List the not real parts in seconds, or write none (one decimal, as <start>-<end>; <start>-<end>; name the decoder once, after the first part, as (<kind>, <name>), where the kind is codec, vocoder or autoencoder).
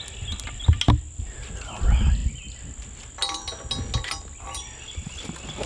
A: none